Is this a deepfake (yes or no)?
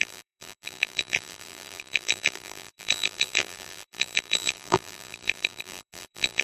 yes